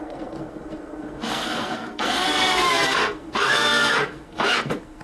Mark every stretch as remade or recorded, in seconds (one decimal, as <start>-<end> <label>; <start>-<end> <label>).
0.0-5.0 remade